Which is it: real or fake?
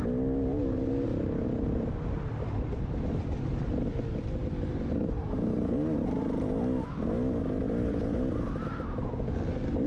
real